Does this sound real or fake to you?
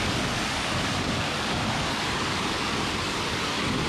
fake